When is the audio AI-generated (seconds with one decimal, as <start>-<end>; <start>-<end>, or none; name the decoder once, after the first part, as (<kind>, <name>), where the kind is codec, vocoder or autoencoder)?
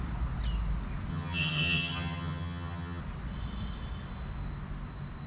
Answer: 1.1-3.0 (vocoder, HiFi-GAN)